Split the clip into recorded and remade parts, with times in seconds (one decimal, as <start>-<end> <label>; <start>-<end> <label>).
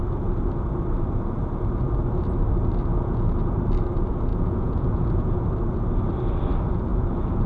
0.0-2.9 recorded; 2.9-3.5 remade; 3.5-4.3 recorded; 4.3-5.4 remade; 5.4-6.9 recorded; 6.9-7.5 remade